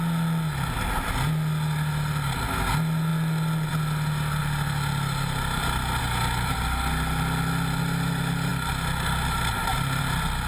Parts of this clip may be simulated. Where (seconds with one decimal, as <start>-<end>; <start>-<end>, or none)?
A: none